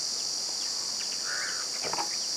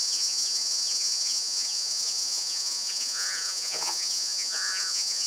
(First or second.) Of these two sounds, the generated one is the second